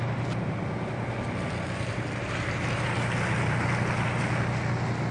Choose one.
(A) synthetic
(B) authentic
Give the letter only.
B